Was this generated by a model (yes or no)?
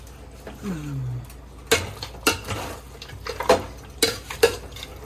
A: no